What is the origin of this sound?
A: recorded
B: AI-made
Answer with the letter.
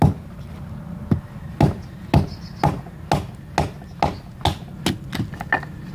A